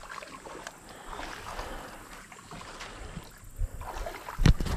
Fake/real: real